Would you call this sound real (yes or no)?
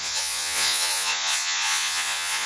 no